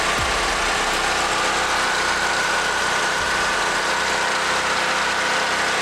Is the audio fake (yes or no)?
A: no